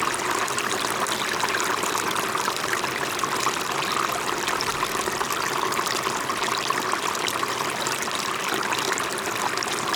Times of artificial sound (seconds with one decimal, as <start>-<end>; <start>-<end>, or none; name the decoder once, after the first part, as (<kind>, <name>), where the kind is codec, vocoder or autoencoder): 0.0-4.7 (vocoder, BigVGAN v2); 6.7-10.0